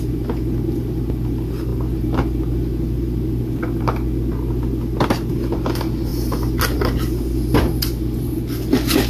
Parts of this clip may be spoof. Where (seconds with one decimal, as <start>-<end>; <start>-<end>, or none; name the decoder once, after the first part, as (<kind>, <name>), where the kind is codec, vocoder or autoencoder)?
none